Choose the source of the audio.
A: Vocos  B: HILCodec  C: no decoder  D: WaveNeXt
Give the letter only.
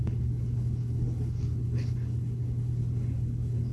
B